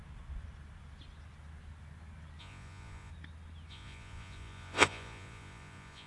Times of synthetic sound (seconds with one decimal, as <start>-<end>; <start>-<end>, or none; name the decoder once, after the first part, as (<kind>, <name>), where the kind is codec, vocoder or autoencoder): 2.4-3.1 (vocoder, Vocos); 3.7-6.1